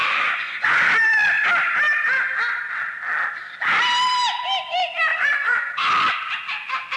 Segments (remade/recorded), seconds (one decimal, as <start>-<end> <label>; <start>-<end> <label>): 0.0-0.9 remade; 0.9-5.1 recorded; 5.1-5.8 remade; 5.8-7.0 recorded